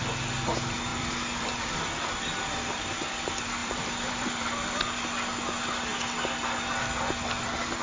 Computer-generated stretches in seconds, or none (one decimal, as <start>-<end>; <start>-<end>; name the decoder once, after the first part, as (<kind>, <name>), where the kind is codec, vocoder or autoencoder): 0.9-1.4 (vocoder, BigVGAN v2); 3.6-4.8